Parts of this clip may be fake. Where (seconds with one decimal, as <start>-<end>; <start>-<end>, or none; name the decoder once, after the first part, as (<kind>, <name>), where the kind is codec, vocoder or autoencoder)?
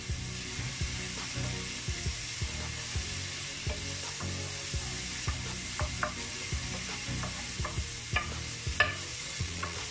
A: 9.1-9.9 (vocoder, Vocos)